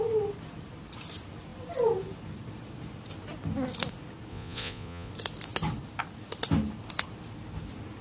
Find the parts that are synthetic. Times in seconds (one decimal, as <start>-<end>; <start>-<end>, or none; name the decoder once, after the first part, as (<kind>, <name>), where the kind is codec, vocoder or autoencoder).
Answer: 4.3-5.1 (vocoder, Vocos)